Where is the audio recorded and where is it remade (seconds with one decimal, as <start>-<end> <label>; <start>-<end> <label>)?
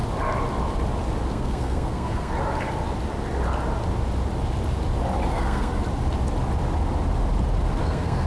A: 0.0-1.3 recorded; 1.3-2.3 remade; 2.3-5.3 recorded; 5.3-5.7 remade; 5.7-7.8 recorded; 7.8-8.3 remade